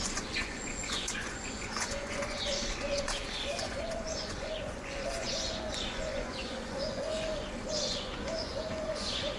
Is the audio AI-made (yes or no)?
yes